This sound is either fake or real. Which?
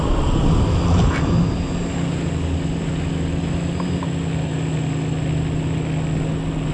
real